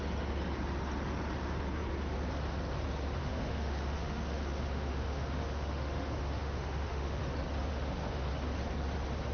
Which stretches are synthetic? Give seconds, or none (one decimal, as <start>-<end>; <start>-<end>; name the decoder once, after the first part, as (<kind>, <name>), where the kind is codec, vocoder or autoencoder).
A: 3.2-7.2 (autoencoder, DAC-VAE); 7.7-8.3